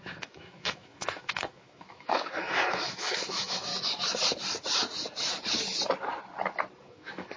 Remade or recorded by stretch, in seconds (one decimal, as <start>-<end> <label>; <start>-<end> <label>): 0.0-3.7 remade; 3.7-6.8 recorded; 6.8-7.4 remade